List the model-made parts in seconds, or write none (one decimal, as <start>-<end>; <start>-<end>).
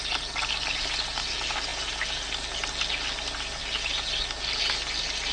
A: none